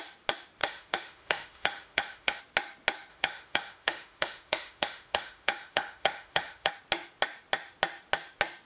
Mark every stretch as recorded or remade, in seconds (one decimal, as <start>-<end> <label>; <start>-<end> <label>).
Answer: 0.0-0.6 recorded; 0.6-2.4 remade; 2.4-3.1 recorded; 3.1-6.7 remade; 6.7-8.7 recorded